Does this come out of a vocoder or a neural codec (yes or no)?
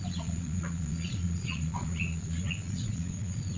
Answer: yes